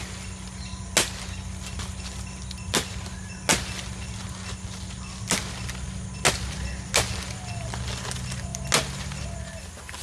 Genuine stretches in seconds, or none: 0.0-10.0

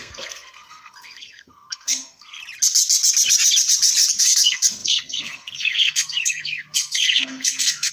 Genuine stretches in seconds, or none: 2.4-4.2

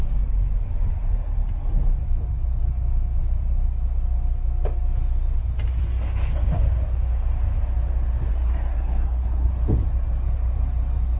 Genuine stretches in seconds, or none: 0.0-8.3; 9.5-11.2